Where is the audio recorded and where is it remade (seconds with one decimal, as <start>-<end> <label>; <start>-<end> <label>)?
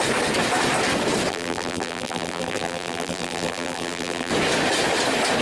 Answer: 0.0-1.3 recorded; 1.3-4.3 remade; 4.3-5.4 recorded